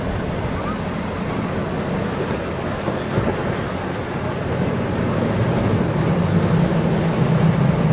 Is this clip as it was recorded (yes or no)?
yes